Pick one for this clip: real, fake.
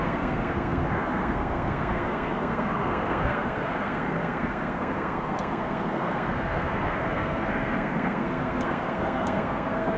fake